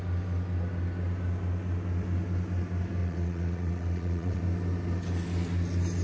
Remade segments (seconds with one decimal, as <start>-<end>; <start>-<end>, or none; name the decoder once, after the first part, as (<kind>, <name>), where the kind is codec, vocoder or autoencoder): 3.0-4.4 (vocoder, WaveNeXt)